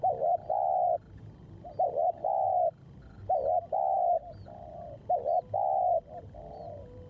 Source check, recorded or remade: recorded